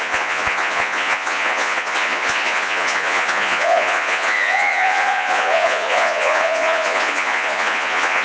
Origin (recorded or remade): remade